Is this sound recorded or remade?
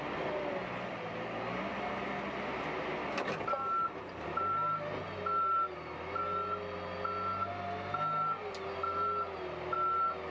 recorded